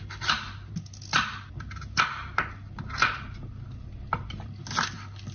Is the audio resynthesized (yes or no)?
no